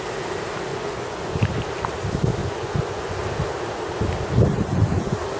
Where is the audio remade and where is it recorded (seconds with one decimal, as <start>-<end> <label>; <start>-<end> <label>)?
0.0-0.7 recorded; 0.7-1.4 remade; 1.4-2.4 recorded; 2.4-3.2 remade; 3.2-5.4 recorded

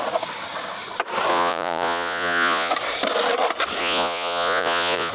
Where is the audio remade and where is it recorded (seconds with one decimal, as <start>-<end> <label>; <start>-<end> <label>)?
0.0-1.3 recorded; 1.3-2.7 remade; 2.7-3.8 recorded; 3.8-5.1 remade